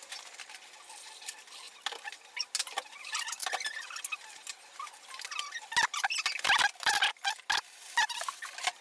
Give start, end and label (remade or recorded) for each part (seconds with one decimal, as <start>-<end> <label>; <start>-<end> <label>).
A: 0.0-8.8 recorded